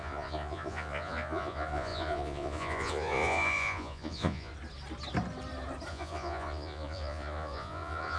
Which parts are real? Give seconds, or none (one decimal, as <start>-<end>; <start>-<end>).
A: 4.5-5.9